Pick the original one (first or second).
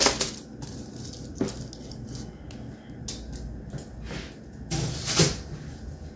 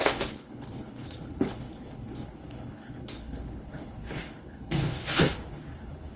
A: first